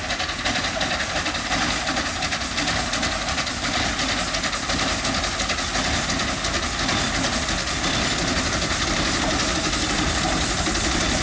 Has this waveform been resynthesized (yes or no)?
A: no